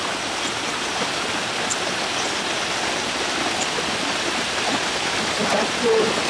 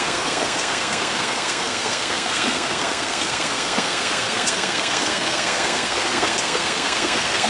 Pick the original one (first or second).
first